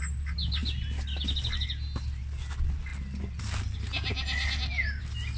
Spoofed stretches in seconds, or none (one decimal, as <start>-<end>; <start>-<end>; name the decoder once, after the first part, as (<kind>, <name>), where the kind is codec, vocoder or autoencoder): none